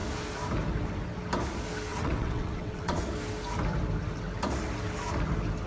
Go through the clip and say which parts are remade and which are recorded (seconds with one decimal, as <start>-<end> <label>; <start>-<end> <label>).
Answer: 0.0-1.9 recorded; 1.9-3.1 remade; 3.1-5.7 recorded

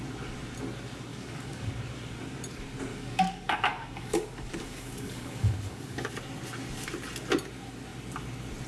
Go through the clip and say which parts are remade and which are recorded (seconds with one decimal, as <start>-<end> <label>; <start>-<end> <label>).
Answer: 0.0-1.1 recorded; 1.1-1.7 remade; 1.7-2.9 recorded; 2.9-6.1 remade; 6.1-8.7 recorded